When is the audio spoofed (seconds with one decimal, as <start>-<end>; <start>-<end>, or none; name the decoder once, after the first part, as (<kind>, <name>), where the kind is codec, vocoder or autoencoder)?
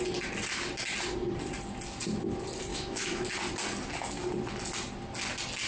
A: 2.7-3.3 (autoencoder, DAC-VAE)